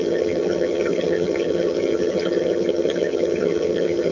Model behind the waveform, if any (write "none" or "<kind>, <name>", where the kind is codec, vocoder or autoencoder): vocoder, HiFi-GAN